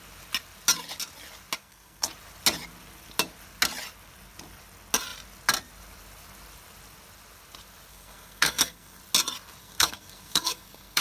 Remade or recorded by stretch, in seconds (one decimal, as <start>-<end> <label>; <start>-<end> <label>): 0.0-1.6 recorded; 1.6-2.1 remade; 2.1-7.9 recorded; 7.9-9.0 remade; 9.0-9.6 recorded; 9.6-11.0 remade